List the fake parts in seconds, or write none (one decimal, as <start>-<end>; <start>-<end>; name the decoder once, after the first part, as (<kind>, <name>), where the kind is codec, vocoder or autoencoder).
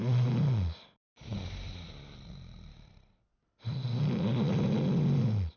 none